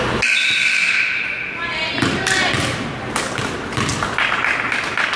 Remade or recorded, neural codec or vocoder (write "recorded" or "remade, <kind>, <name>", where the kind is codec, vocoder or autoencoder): remade, vocoder, BigVGAN v2